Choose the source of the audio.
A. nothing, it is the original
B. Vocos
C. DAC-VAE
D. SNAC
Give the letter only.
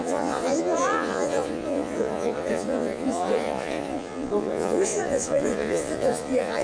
B